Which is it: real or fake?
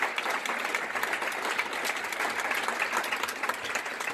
real